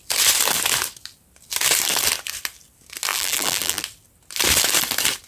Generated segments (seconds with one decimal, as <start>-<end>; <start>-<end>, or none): 3.1-3.8